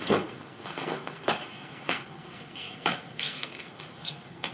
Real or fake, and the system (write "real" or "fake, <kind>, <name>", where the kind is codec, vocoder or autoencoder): fake, codec, SNAC